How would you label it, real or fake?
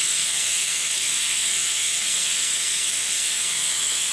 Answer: fake